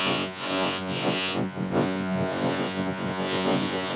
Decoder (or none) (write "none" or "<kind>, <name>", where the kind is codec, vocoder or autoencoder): vocoder, Vocos